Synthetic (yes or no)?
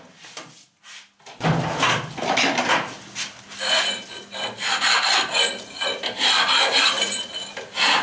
no